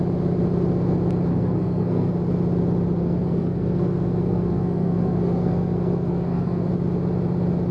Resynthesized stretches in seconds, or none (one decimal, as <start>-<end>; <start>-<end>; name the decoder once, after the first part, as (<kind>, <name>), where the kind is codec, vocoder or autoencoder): 1.3-2.1 (codec, SNAC); 3.0-6.7